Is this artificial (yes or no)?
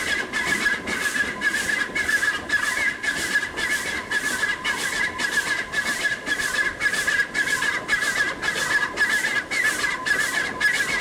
no